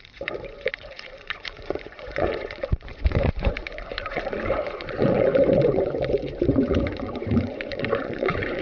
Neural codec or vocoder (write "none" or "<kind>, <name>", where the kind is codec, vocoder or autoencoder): vocoder, Vocos